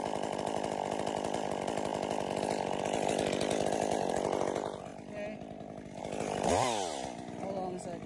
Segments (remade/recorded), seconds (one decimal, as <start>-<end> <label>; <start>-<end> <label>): 0.0-8.1 recorded